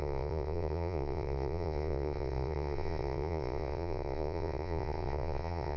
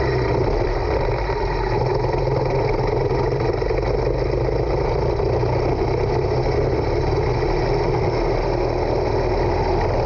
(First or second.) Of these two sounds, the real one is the second